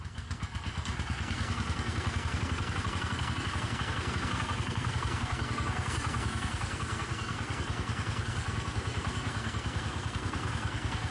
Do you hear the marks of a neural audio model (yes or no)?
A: yes